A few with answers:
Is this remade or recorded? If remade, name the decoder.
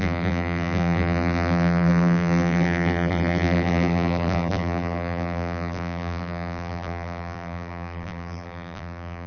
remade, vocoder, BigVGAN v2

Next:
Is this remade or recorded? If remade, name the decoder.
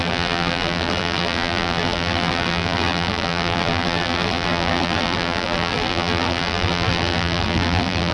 remade, vocoder, BigVGAN v2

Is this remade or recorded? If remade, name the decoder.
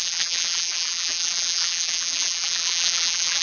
remade, vocoder, BigVGAN v2